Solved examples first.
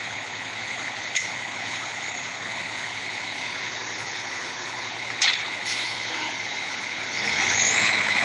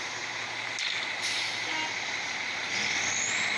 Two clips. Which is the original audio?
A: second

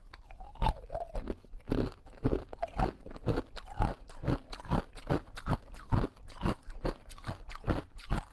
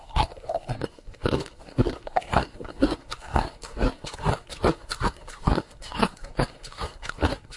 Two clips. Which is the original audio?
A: first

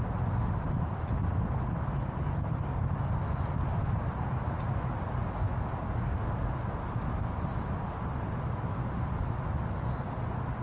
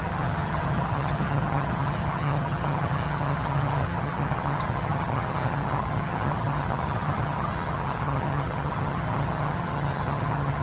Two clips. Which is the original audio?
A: first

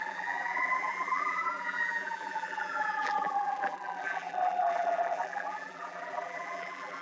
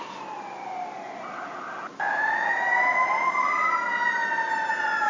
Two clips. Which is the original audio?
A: second